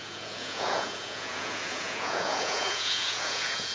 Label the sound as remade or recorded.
remade